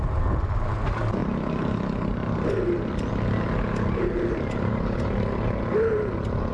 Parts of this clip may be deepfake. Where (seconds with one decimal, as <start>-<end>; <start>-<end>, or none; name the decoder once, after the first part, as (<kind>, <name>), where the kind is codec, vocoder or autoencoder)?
none